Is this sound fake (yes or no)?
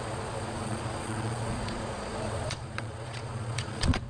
yes